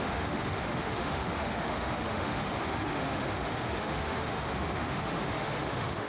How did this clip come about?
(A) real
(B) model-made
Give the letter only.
B